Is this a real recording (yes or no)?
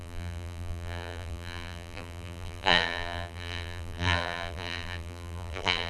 no